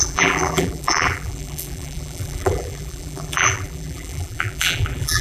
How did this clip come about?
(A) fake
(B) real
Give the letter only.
A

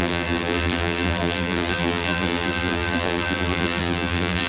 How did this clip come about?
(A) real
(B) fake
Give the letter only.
B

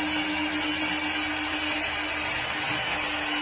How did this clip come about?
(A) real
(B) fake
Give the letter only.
A